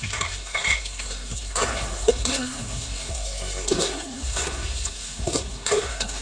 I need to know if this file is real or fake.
fake